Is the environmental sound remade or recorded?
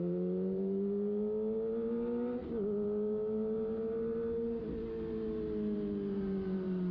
recorded